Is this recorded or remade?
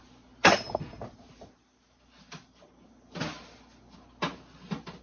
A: recorded